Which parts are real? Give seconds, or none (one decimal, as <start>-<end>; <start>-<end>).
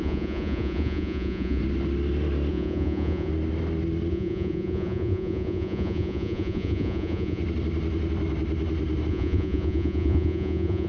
1.6-2.5; 3.3-4.1; 7.4-9.1